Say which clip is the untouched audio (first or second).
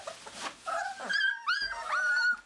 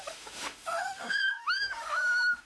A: first